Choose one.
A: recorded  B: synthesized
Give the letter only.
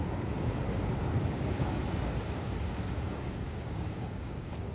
B